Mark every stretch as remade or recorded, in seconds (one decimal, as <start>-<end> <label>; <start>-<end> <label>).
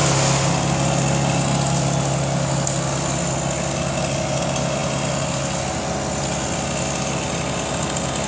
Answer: 0.0-8.3 recorded